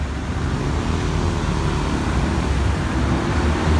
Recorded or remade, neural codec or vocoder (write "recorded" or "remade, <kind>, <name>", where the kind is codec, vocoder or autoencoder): recorded